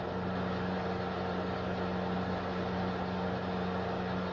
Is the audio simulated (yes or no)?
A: no